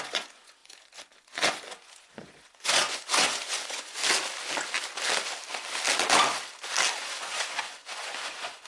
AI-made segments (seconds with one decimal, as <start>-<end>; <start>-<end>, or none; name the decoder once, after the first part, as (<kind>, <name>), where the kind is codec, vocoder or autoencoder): 0.0-4.0 (vocoder, Vocos); 6.9-8.7